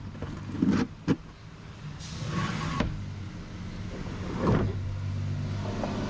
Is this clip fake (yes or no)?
no